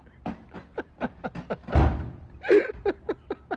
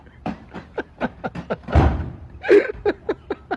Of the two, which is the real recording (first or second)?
first